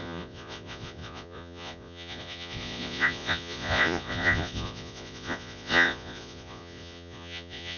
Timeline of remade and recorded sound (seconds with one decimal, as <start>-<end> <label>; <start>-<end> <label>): 0.0-7.8 remade